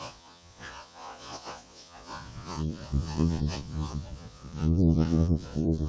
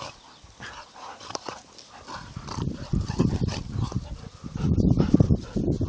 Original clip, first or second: second